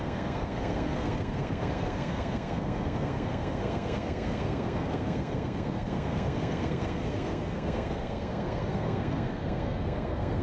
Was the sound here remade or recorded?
remade